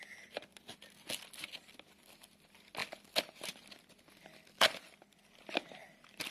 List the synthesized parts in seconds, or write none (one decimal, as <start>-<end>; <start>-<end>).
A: none